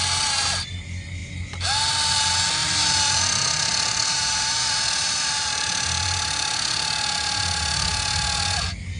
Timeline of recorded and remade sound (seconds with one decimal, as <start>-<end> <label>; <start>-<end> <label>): 0.0-2.6 recorded; 2.6-6.5 remade; 6.5-9.0 recorded